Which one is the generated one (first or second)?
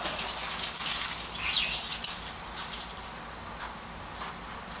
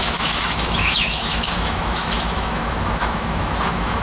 second